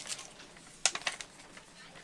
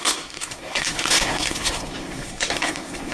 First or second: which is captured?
first